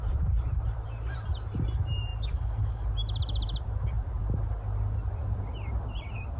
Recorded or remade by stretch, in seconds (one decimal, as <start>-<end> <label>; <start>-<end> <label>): 0.0-2.1 remade; 2.1-3.6 recorded; 3.6-4.2 remade; 4.2-5.1 recorded; 5.1-6.4 remade